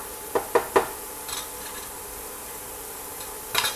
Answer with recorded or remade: remade